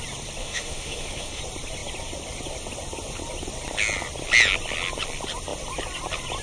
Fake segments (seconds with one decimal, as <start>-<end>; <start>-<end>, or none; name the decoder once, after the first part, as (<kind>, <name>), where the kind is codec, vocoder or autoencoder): 0.4-1.4 (autoencoder, DAC-VAE)